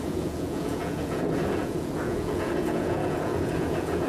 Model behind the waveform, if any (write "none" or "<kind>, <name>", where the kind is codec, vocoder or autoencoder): vocoder, Vocos